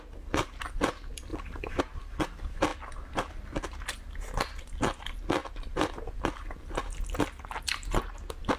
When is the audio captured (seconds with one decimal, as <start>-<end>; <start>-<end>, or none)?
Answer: 0.0-1.3; 1.8-5.4; 6.5-8.6